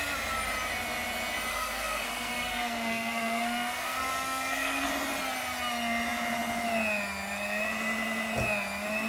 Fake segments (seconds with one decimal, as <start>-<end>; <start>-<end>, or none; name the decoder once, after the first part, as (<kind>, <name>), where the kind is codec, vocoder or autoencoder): 1.5-4.9 (codec, SNAC)